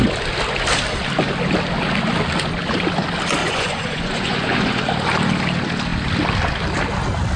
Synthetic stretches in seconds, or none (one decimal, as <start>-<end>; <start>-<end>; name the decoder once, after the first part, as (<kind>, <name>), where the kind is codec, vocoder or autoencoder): 3.4-4.8 (vocoder, Vocos)